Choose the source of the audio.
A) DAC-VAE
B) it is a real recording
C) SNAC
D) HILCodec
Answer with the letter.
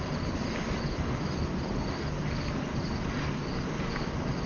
B